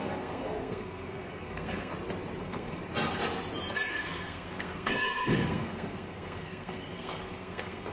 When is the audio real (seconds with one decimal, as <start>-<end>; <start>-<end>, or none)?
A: 1.9-2.4; 2.8-3.9